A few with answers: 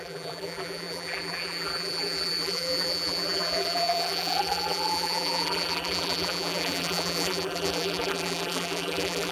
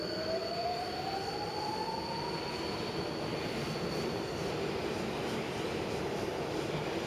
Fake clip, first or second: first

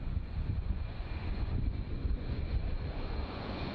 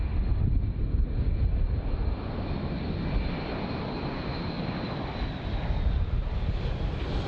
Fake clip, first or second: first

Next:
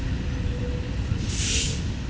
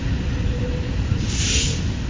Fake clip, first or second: second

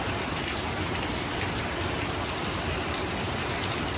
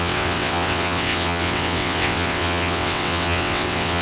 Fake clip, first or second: second